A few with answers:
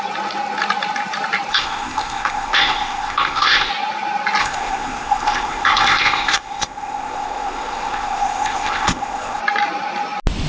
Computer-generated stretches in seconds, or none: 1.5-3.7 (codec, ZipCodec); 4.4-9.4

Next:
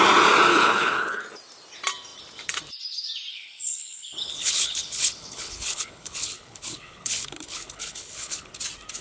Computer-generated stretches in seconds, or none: 0.5-1.2 (codec, HILCodec); 3.3-8.5

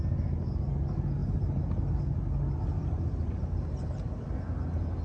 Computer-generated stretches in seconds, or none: 2.8-4.5 (vocoder, BigVGAN v2)